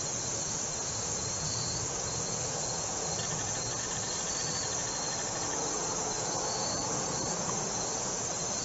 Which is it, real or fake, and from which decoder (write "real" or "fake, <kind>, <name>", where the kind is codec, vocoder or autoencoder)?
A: fake, vocoder, Vocos